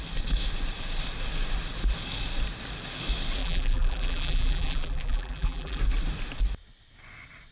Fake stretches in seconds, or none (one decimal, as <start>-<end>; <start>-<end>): 3.4-5.8

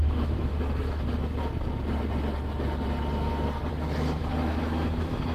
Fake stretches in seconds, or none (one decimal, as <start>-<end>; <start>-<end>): 0.0-0.5; 3.7-5.3

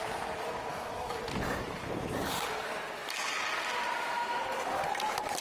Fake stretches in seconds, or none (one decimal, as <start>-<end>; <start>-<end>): 0.7-1.2

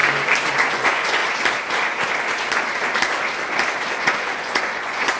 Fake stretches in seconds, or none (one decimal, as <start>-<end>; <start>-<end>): 0.7-1.2; 3.9-5.2

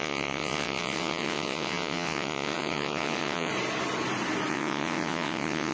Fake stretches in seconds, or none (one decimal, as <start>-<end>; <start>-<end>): 0.0-3.5; 4.5-5.7

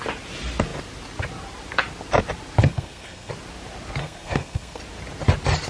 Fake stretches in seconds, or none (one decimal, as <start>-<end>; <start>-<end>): 2.6-3.3; 4.0-4.8

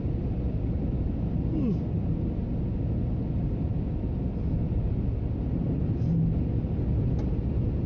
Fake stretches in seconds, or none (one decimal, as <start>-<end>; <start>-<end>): none